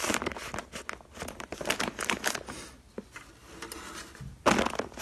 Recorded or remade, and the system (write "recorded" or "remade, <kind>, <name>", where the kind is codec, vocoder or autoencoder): recorded